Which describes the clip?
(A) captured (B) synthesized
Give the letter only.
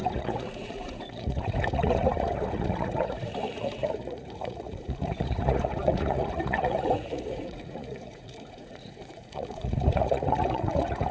B